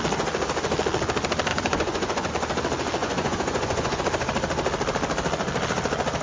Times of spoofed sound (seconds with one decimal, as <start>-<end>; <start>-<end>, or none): 1.5-2.3; 3.0-4.0